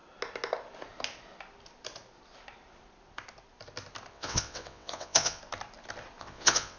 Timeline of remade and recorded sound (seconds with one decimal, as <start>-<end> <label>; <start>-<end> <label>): 0.0-4.1 recorded; 4.1-5.4 remade; 5.4-6.2 recorded; 6.2-6.8 remade